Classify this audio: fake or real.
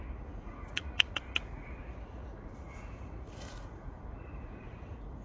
fake